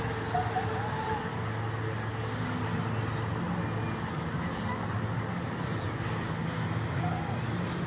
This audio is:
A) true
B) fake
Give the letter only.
A